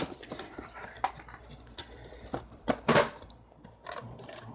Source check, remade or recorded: remade